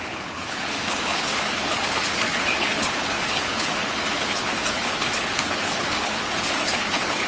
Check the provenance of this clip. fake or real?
fake